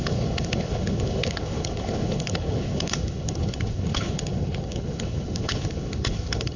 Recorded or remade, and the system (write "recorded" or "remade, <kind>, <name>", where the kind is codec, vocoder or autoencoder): remade, codec, HILCodec